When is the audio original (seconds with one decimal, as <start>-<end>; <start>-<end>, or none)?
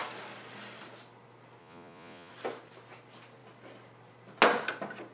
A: 0.0-1.6; 2.3-5.1